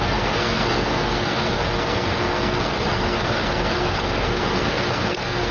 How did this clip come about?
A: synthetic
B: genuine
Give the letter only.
A